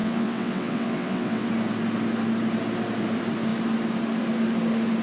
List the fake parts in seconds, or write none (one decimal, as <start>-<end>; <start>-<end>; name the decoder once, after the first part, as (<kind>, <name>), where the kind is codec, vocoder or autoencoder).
0.0-1.5 (vocoder, WaveNeXt)